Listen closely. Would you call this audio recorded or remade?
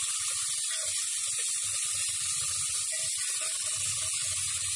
recorded